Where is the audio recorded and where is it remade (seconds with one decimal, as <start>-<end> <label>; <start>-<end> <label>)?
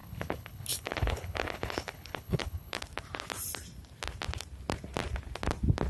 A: 0.0-2.8 remade; 2.8-5.9 recorded